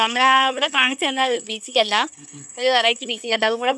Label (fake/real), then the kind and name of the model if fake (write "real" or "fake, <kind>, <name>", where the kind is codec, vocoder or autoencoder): fake, codec, SNAC